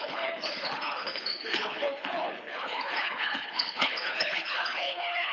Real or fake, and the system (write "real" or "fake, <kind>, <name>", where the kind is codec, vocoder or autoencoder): fake, codec, HILCodec